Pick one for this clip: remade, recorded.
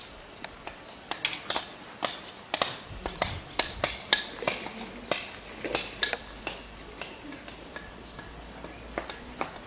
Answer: recorded